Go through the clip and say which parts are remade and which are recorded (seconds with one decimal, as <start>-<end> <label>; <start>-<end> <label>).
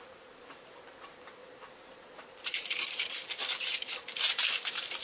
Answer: 0.0-5.0 remade